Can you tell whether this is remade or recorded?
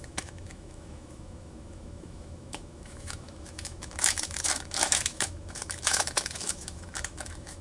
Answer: remade